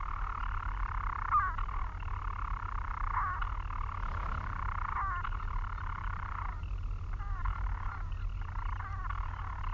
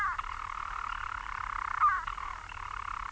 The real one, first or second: first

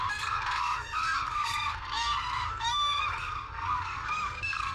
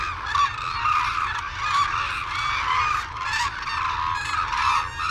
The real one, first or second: second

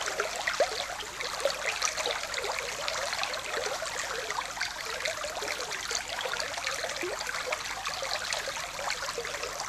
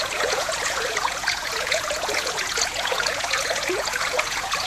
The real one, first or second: first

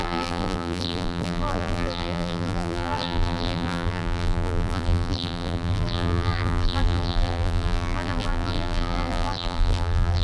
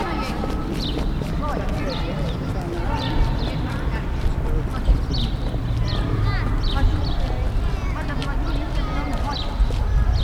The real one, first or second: second